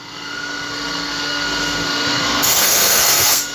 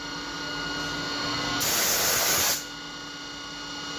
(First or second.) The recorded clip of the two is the second